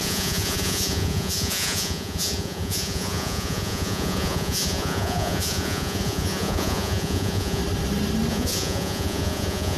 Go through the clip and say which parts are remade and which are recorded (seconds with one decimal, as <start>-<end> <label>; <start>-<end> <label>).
0.0-7.6 remade; 7.6-8.3 recorded; 8.3-9.8 remade